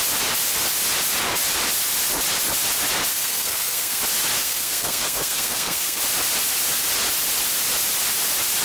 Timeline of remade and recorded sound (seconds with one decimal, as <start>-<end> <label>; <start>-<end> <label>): 0.0-3.1 recorded; 3.1-4.0 remade; 4.0-4.4 recorded; 4.4-6.0 remade; 6.0-8.6 recorded